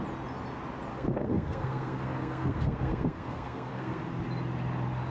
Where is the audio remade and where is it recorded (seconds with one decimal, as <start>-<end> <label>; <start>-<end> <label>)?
0.0-0.9 recorded; 0.9-4.0 remade; 4.0-5.1 recorded